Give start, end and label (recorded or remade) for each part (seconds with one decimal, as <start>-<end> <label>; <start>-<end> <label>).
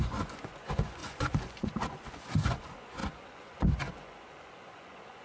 0.0-5.2 remade